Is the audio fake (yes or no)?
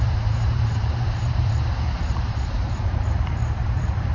yes